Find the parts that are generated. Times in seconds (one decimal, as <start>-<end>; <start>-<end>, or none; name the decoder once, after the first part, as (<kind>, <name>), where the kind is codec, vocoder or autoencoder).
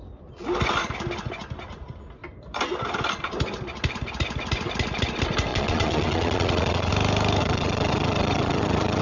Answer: 5.5-6.9 (vocoder, Vocos); 7.4-9.0